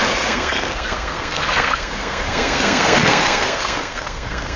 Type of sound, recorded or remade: remade